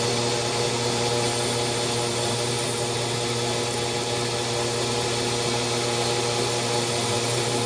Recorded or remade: recorded